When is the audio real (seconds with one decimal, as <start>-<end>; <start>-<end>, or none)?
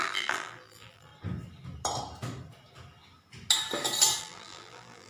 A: 1.1-4.2